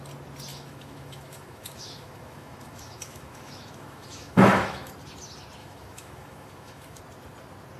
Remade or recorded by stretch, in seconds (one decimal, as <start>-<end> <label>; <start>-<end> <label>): 0.0-0.5 recorded; 0.5-4.9 remade; 4.9-5.6 recorded; 5.6-7.0 remade; 7.0-7.8 recorded